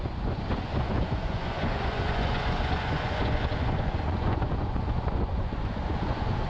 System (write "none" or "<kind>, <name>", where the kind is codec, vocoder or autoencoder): vocoder, Vocos